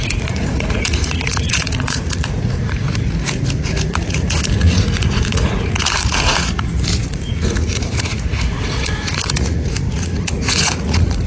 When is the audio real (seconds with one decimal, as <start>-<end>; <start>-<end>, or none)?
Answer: none